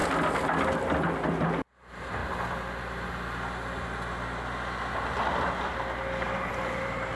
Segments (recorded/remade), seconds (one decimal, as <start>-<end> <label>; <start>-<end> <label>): 0.0-1.3 recorded; 1.3-2.2 remade; 2.2-6.5 recorded; 6.5-7.2 remade